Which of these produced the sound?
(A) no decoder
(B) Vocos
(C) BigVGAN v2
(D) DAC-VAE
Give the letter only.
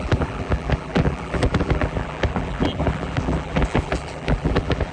C